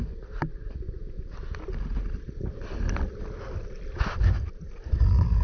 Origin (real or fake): real